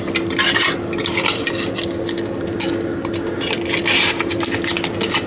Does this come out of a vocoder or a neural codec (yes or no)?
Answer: no